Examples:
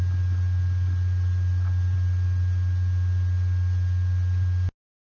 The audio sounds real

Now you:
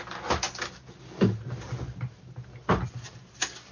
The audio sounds real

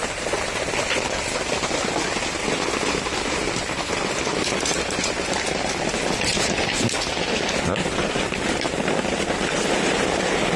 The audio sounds real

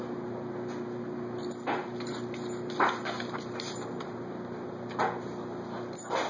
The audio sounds real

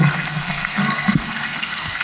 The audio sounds fake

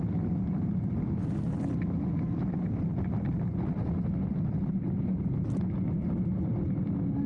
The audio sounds real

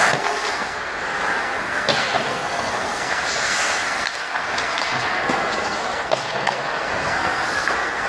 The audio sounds fake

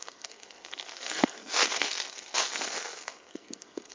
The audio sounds fake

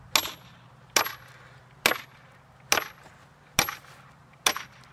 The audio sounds real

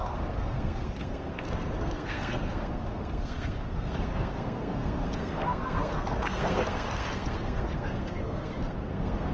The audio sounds fake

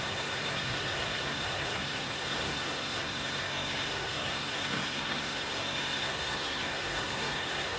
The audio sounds fake